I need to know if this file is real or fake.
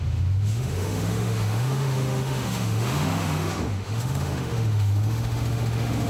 fake